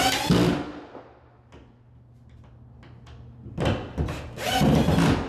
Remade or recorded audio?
recorded